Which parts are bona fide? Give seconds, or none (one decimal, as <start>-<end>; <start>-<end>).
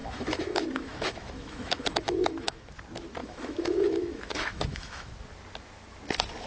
2.7-3.2; 5.1-6.5